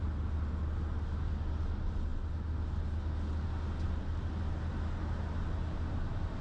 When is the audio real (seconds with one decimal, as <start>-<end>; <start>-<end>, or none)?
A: 0.0-6.4